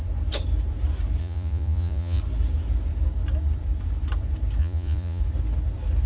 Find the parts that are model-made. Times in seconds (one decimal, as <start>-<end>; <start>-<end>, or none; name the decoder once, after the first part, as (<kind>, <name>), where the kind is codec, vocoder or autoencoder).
1.2-2.2 (vocoder, Vocos); 4.6-5.2

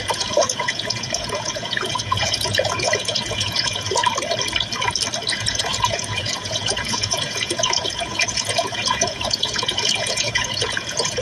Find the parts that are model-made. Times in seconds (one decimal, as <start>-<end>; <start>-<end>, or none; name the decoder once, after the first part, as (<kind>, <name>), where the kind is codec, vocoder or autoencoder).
0.0-4.0 (vocoder, Vocos); 5.3-11.2

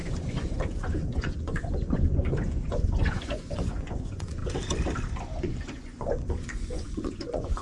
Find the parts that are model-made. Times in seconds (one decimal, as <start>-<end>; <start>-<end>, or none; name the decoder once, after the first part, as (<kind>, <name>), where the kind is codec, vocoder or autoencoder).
0.0-4.4 (vocoder, Vocos); 5.4-7.6